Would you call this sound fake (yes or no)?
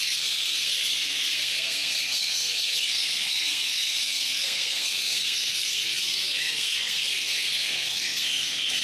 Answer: yes